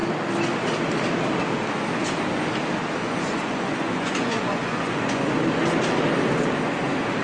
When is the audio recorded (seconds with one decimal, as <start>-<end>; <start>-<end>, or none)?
0.0-3.0; 5.3-7.2